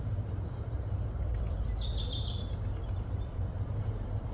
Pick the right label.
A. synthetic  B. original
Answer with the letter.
A